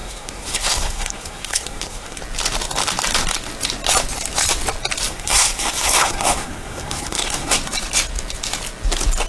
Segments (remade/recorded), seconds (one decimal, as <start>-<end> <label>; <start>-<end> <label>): 0.0-2.2 remade; 2.2-5.1 recorded; 5.1-7.6 remade; 7.6-9.3 recorded